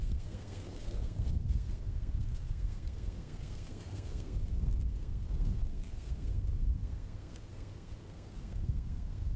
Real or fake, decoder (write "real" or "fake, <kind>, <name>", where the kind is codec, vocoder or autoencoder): fake, codec, SNAC